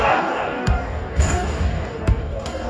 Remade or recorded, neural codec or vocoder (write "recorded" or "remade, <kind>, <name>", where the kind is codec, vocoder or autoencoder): remade, codec, DAC